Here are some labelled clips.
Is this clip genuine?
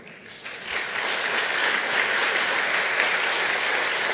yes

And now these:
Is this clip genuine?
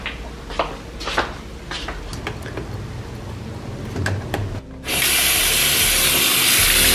yes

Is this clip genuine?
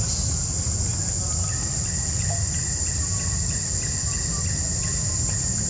yes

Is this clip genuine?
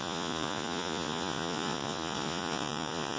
no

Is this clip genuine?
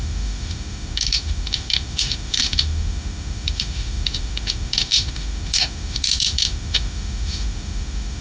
no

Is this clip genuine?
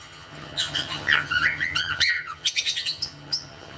no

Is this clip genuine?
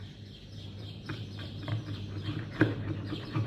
no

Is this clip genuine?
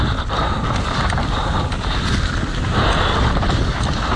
yes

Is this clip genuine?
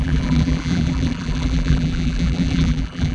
no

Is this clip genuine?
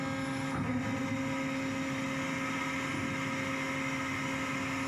yes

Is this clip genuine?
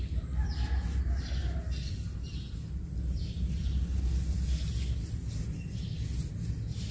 yes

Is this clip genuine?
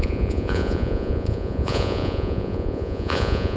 no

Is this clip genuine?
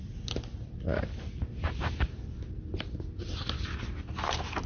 yes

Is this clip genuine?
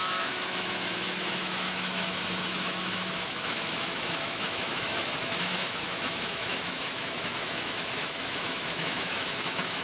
no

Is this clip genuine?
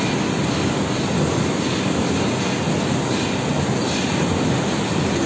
yes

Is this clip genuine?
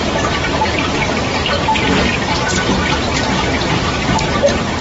yes